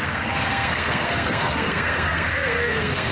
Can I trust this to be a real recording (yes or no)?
no